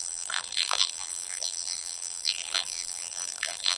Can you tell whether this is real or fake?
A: fake